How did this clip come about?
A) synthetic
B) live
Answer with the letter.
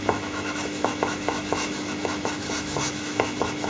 A